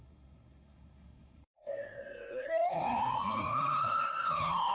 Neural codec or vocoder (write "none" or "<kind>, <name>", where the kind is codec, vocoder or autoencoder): codec, SNAC